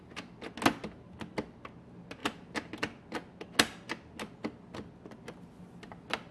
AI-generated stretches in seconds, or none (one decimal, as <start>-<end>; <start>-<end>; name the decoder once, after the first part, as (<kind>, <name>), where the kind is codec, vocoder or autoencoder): none

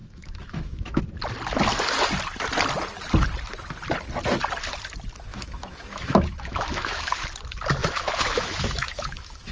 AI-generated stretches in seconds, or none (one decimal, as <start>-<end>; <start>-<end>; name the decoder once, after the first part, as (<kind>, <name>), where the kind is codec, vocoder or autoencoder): 0.0-1.0 (autoencoder, DAC-VAE); 5.3-7.1; 7.8-9.5